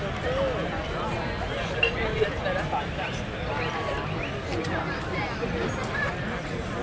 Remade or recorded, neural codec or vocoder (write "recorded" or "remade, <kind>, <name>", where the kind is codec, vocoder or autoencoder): recorded